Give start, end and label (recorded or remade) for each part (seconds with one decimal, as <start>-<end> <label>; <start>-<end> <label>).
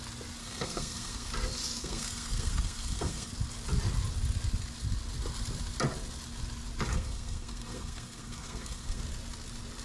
0.0-0.4 recorded; 0.4-1.3 remade; 1.3-1.8 recorded; 1.8-3.3 remade; 3.3-6.9 recorded; 6.9-9.0 remade; 9.0-9.8 recorded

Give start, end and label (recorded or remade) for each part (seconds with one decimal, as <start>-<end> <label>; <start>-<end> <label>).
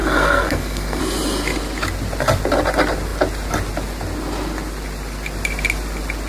0.0-1.0 remade; 1.0-6.3 recorded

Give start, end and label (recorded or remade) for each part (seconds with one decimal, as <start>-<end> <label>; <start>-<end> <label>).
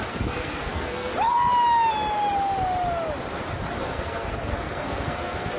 0.0-1.1 remade; 1.1-3.8 recorded; 3.8-5.6 remade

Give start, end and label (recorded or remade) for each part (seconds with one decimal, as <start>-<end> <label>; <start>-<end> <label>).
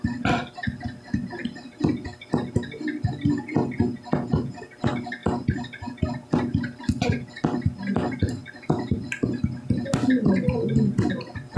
0.0-11.6 recorded